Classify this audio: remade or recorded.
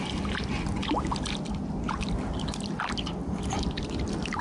recorded